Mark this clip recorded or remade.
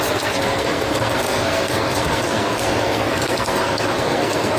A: remade